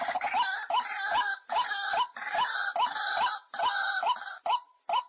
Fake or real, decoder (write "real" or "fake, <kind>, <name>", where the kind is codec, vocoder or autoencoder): real